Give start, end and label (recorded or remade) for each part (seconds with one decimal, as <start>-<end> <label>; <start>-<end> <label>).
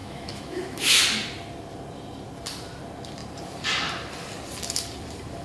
0.0-1.0 remade; 1.0-5.4 recorded